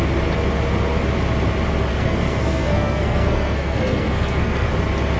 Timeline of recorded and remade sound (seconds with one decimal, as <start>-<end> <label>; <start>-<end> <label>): 0.0-1.9 recorded; 1.9-4.7 remade; 4.7-5.2 recorded

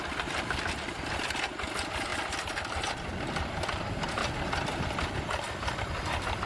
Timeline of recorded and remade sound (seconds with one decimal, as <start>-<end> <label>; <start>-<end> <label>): 0.0-6.5 recorded

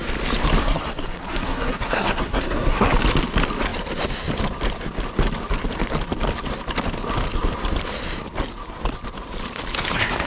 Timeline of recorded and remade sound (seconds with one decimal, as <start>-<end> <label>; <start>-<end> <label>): 0.0-0.6 recorded; 0.6-2.9 remade; 2.9-10.3 recorded

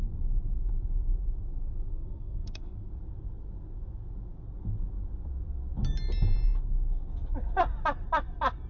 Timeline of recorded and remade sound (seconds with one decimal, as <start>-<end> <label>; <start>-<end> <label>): 0.0-1.9 recorded; 1.9-2.9 remade; 2.9-8.7 recorded

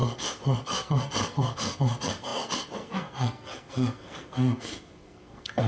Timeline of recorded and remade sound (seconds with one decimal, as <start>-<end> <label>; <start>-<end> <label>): 0.0-5.7 remade

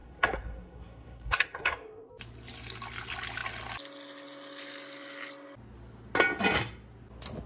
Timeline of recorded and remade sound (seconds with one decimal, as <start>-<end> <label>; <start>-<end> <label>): 0.0-2.1 remade; 2.1-7.5 recorded

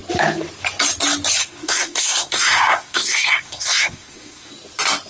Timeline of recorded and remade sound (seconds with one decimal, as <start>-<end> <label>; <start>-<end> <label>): 0.0-1.4 recorded; 1.4-4.5 remade; 4.5-5.1 recorded